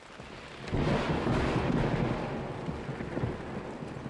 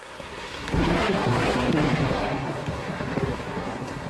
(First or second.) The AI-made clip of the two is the second